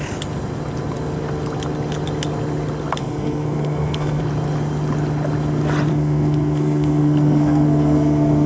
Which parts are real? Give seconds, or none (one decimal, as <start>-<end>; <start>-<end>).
0.0-3.0; 4.2-5.9